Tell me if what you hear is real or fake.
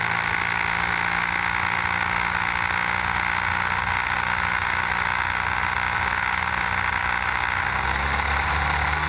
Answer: real